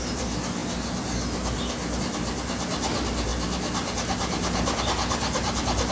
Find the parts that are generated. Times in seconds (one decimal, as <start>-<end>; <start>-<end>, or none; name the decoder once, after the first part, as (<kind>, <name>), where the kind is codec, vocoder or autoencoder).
none

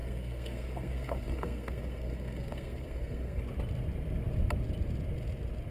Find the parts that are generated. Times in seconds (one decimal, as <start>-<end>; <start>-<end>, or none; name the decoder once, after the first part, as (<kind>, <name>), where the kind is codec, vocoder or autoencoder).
0.0-3.4 (codec, SNAC)

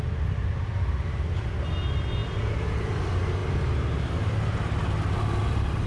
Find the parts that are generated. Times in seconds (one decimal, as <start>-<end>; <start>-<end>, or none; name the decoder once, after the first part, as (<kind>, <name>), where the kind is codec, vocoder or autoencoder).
none

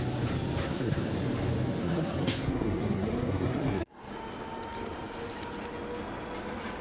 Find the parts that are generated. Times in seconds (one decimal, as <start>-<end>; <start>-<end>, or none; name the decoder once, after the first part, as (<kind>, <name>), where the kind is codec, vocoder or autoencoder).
0.6-1.1 (codec, SNAC); 1.8-4.1

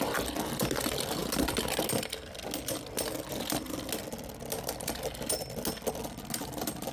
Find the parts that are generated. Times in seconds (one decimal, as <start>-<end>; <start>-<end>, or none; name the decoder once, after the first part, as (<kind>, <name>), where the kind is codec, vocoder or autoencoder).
none

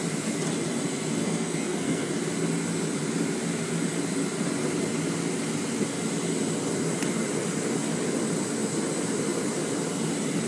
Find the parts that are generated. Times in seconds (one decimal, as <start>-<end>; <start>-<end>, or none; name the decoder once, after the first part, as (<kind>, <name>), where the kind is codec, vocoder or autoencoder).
1.2-2.1 (codec, SNAC)

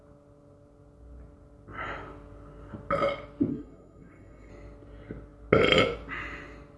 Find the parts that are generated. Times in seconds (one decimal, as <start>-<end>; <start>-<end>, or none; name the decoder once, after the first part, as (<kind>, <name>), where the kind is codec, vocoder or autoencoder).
3.5-4.5 (codec, SNAC)

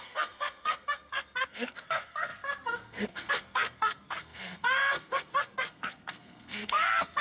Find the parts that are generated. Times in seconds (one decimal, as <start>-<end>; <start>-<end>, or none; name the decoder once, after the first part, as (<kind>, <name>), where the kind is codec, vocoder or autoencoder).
0.0-7.2 (codec, SNAC)